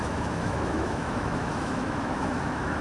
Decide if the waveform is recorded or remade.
remade